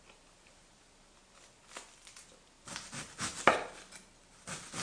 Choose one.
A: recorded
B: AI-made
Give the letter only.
A